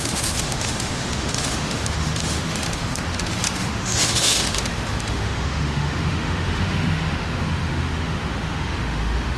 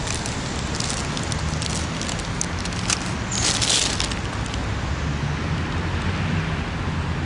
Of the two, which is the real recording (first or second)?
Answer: second